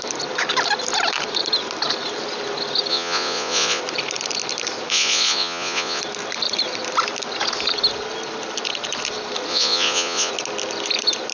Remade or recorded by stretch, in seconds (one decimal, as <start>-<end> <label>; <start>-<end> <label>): 0.0-2.9 recorded; 2.9-3.8 remade; 3.8-4.9 recorded; 4.9-6.0 remade; 6.0-9.5 recorded; 9.5-10.3 remade; 10.3-11.3 recorded